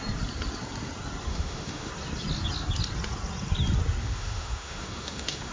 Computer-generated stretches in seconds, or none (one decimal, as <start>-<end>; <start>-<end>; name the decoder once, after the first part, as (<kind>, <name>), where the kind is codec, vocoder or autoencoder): 1.3-1.9 (autoencoder, DAC-VAE); 4.0-5.5